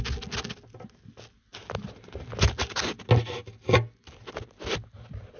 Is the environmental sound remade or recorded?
recorded